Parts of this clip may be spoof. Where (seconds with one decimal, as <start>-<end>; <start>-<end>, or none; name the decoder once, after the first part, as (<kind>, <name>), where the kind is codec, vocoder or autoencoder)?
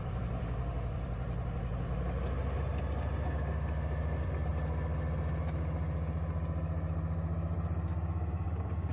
0.0-4.5 (vocoder, BigVGAN v2); 8.3-8.9